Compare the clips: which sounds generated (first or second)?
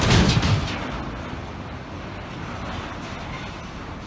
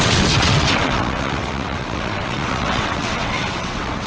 second